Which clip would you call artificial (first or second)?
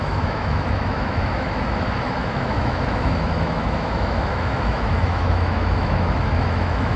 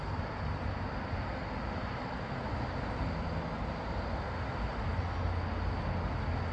first